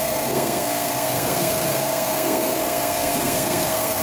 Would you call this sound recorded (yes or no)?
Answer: no